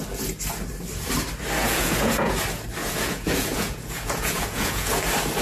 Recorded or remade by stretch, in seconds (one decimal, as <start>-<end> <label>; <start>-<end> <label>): 0.0-1.6 recorded; 1.6-2.3 remade; 2.3-2.8 recorded; 2.8-5.0 remade; 5.0-5.4 recorded